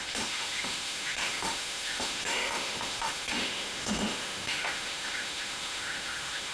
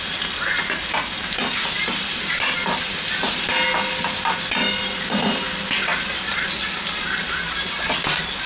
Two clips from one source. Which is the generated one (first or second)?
first